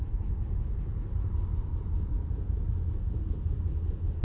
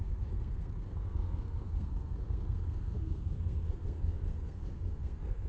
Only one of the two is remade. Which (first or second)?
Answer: second